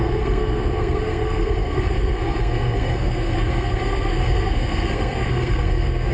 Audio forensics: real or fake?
fake